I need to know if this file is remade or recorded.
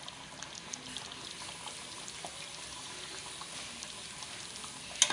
recorded